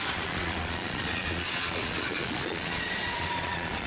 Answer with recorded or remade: remade